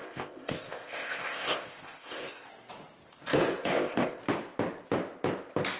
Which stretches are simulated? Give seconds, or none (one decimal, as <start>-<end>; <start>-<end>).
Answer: 0.0-2.5; 3.6-4.2